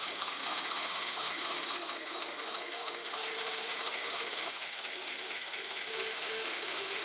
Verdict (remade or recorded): remade